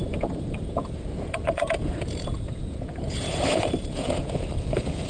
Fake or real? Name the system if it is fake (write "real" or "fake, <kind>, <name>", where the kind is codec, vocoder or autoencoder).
fake, vocoder, Vocos